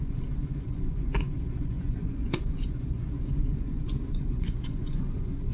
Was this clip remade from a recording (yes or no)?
yes